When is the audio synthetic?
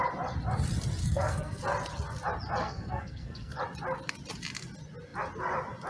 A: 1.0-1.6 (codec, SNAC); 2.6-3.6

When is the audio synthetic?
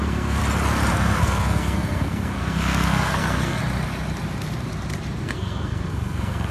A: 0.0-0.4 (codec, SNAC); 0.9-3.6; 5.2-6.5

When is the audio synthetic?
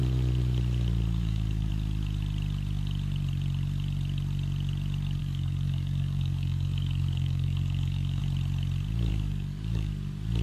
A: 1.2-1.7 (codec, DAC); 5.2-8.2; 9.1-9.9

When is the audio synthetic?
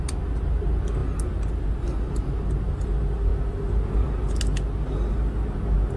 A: none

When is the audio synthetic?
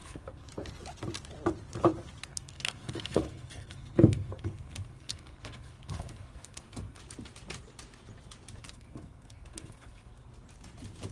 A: 0.0-0.5 (codec, SNAC); 2.3-7.0; 8.6-10.3